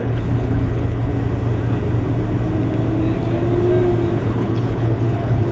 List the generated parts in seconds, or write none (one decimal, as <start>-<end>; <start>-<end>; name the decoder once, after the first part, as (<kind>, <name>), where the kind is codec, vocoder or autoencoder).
0.0-1.1 (codec, HILCodec); 4.2-5.5